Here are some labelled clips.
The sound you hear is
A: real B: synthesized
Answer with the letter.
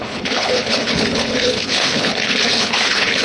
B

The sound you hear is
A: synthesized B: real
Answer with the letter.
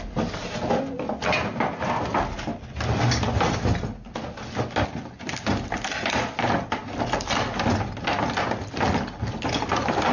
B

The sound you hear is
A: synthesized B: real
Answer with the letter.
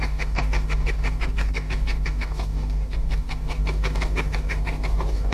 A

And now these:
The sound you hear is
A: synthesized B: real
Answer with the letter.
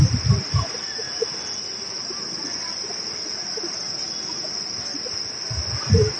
B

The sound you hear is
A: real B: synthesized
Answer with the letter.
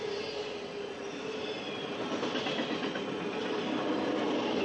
A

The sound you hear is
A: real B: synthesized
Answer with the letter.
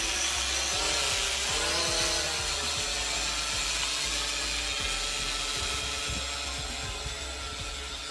A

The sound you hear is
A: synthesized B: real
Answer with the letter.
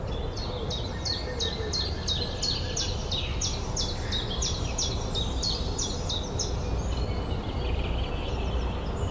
B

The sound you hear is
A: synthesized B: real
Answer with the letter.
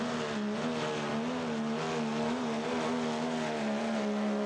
B